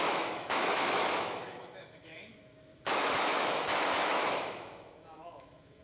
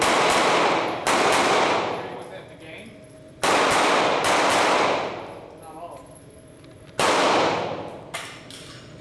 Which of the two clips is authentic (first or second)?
second